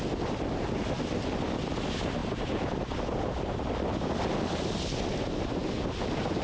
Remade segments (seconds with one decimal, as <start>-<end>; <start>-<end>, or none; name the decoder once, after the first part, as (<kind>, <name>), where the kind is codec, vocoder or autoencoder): none